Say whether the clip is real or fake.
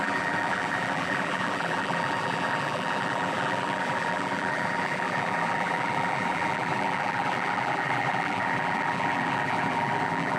fake